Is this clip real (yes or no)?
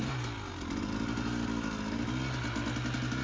yes